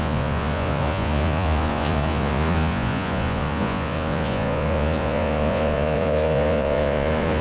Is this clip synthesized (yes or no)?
yes